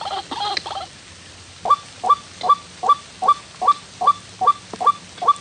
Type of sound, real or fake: real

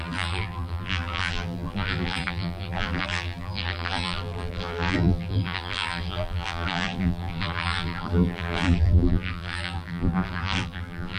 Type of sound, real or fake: fake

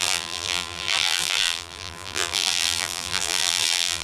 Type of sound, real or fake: fake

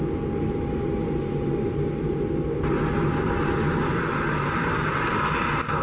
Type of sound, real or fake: real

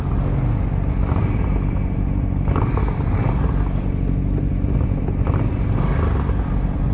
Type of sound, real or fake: real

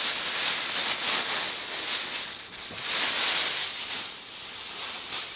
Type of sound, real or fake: real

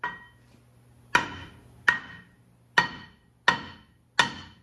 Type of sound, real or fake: real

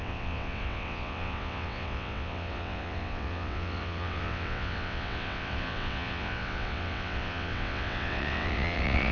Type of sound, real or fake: fake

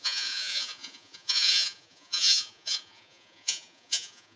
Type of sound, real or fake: fake